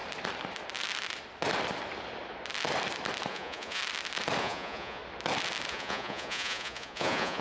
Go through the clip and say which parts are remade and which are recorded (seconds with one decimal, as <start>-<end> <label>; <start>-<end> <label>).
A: 0.0-3.3 recorded; 3.3-3.8 remade; 3.8-4.4 recorded; 4.4-5.0 remade; 5.0-5.7 recorded; 5.7-7.4 remade